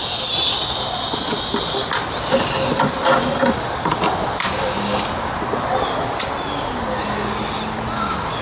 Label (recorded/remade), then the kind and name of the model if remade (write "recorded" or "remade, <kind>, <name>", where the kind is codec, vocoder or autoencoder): recorded